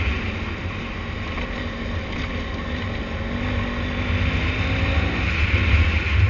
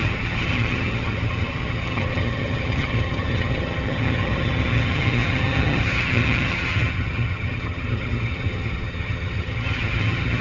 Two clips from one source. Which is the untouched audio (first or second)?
first